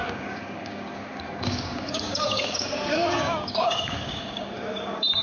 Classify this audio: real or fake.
fake